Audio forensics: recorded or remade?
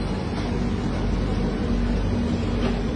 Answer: recorded